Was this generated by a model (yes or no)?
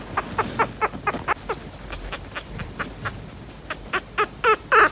no